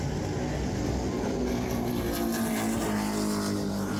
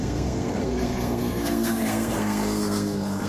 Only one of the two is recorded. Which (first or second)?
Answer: first